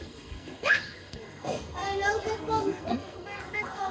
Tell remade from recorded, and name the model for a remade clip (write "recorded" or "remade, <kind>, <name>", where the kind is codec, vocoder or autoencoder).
remade, codec, SNAC